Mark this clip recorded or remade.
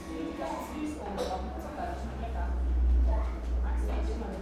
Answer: recorded